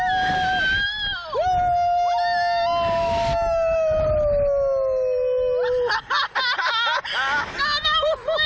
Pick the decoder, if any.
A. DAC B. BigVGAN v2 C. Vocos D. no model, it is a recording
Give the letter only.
D